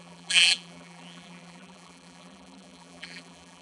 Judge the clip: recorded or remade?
remade